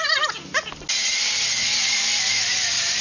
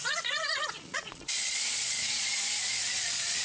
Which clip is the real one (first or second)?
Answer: first